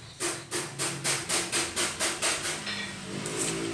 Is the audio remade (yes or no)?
no